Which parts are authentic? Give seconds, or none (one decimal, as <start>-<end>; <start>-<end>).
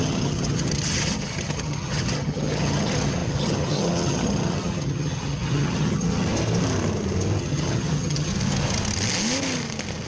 6.3-7.4; 8.3-10.1